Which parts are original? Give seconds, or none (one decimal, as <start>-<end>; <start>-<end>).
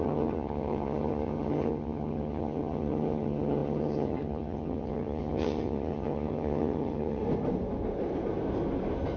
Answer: 7.2-9.2